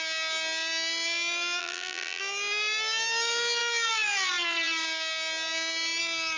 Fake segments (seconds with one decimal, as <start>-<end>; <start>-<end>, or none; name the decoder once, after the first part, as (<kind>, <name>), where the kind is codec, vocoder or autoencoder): 1.6-2.2 (vocoder, BigVGAN v2)